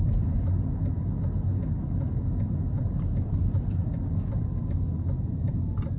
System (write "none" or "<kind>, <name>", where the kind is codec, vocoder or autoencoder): none